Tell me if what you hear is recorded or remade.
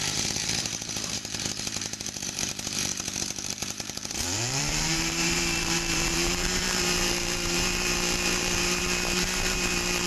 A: remade